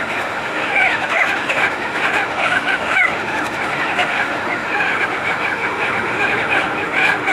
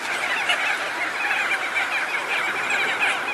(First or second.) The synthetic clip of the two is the first